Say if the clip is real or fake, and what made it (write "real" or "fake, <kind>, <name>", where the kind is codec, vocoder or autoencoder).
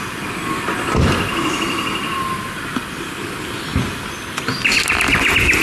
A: real